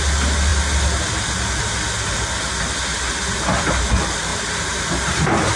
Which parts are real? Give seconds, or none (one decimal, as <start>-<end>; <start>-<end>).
0.0-4.3